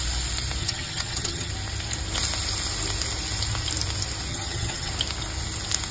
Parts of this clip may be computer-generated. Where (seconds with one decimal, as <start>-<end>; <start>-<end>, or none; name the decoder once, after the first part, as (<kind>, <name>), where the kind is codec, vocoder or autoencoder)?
0.6-1.5 (vocoder, HiFi-GAN); 4.3-4.9